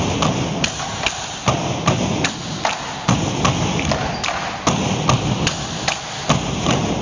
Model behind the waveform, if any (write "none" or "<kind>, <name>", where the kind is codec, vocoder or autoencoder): none